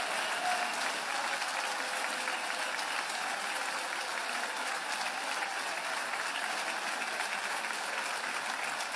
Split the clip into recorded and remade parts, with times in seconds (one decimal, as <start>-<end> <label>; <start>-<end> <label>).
0.0-9.0 recorded